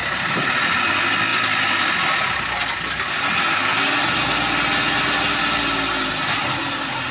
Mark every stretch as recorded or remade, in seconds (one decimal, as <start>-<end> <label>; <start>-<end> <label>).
0.0-0.9 remade; 0.9-7.1 recorded